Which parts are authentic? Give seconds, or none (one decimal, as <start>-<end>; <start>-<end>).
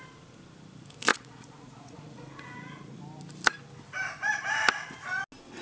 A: 0.0-1.1; 3.0-5.6